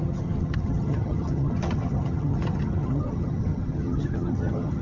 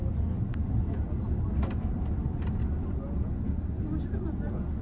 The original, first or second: second